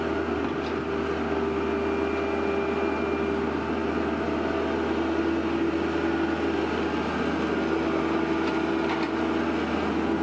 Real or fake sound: real